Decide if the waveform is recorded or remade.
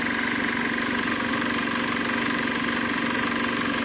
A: recorded